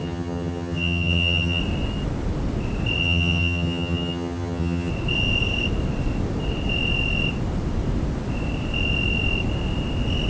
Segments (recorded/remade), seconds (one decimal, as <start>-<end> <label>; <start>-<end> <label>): 0.0-1.6 remade; 1.6-3.0 recorded; 3.0-4.9 remade; 4.9-10.3 recorded